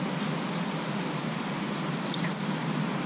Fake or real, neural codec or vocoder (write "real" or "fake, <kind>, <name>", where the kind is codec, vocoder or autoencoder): real